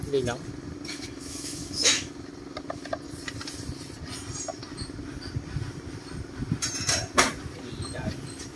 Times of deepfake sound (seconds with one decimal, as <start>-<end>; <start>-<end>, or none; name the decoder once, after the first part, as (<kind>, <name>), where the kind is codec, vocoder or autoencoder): 0.9-2.1 (autoencoder, DAC-VAE)